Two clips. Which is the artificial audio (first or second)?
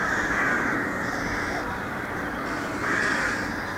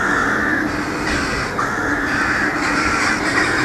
first